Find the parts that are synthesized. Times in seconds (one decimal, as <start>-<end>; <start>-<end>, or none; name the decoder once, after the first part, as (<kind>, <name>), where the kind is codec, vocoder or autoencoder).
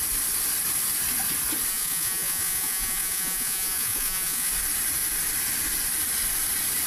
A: 1.7-4.5 (vocoder, Vocos)